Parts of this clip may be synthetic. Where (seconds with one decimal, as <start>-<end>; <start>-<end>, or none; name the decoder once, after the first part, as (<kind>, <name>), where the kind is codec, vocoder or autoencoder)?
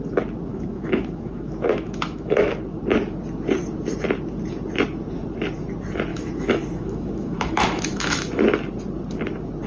0.5-2.5 (autoencoder, DAC-VAE); 6.1-8.4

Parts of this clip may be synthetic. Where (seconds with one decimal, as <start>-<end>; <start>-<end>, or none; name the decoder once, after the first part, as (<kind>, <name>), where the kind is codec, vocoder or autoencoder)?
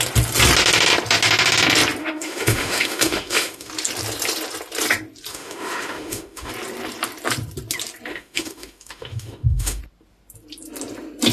2.0-3.7 (autoencoder, DAC-VAE); 5.3-6.5; 8.1-9.8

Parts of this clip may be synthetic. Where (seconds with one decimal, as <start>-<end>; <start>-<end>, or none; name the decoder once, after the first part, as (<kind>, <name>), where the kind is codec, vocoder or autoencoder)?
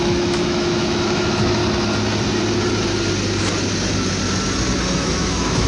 0.0-1.6 (autoencoder, DAC-VAE); 5.0-5.7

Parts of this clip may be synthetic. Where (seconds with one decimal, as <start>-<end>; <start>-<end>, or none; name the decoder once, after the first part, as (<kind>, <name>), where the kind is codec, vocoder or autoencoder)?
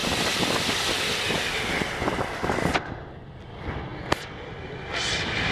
none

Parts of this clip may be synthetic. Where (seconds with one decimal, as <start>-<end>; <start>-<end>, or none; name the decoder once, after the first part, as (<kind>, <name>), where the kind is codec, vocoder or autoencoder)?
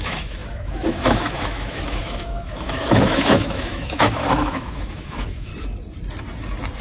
0.0-5.5 (autoencoder, DAC-VAE)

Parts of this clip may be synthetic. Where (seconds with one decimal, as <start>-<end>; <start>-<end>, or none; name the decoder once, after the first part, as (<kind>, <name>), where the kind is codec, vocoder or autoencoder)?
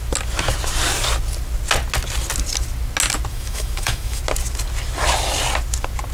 3.3-4.2 (autoencoder, DAC-VAE)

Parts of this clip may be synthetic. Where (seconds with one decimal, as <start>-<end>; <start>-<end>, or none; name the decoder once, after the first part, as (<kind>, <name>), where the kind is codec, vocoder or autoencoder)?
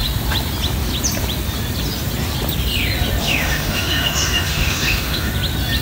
3.2-5.3 (autoencoder, DAC-VAE)